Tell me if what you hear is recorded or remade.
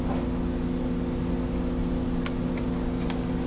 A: recorded